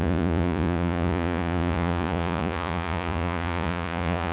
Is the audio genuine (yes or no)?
no